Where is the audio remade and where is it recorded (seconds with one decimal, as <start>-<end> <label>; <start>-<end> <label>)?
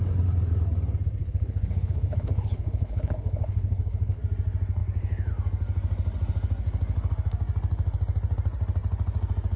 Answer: 0.0-1.2 recorded; 1.2-4.2 remade; 4.2-9.6 recorded